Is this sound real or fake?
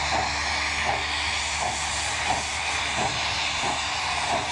real